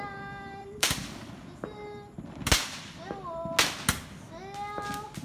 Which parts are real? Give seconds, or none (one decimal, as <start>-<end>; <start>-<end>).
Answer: 0.0-0.6; 1.6-2.6; 3.1-5.2

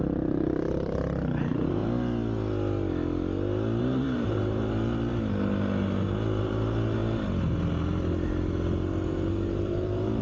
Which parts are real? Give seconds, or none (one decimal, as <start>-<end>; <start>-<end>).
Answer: 1.8-3.8; 5.1-6.4; 7.0-9.1

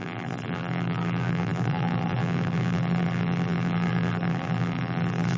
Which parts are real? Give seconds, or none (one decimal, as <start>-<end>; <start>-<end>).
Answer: none